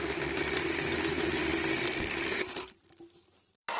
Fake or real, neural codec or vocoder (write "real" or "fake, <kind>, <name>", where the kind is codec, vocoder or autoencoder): fake, vocoder, BigVGAN v2